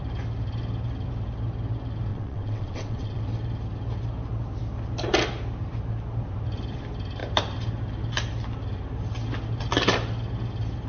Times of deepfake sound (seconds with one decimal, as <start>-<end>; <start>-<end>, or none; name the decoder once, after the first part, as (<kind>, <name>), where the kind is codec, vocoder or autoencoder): 2.1-3.2 (vocoder, WaveNeXt)